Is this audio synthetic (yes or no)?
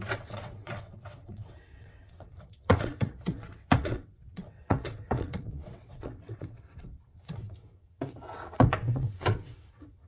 yes